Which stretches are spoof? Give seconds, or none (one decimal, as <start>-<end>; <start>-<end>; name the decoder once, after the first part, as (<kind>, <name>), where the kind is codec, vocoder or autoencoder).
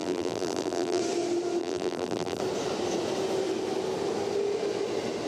0.0-1.0 (vocoder, BigVGAN v2); 1.6-2.4